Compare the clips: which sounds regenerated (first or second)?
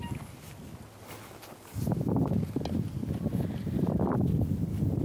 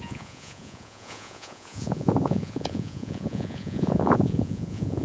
second